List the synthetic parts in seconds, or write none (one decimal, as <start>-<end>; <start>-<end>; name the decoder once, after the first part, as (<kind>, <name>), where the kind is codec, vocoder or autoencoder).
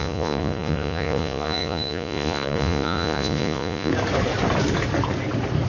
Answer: 0.0-3.9 (vocoder, Vocos)